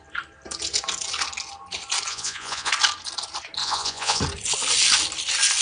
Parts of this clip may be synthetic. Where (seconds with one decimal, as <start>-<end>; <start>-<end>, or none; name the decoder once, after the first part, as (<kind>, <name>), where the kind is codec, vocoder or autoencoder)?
2.1-2.7 (vocoder, Vocos); 3.6-4.2